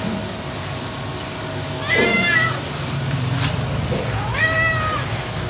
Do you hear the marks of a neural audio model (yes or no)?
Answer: no